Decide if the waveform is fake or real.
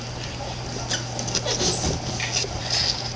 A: real